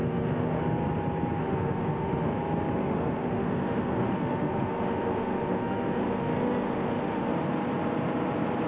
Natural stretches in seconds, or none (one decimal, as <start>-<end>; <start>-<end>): 0.6-1.4; 2.3-2.8; 7.3-8.7